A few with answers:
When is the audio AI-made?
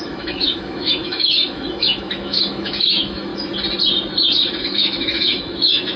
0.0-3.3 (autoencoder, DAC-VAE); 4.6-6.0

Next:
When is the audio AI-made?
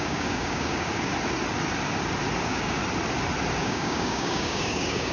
0.0-1.1 (codec, DAC); 2.4-2.8; 3.6-5.1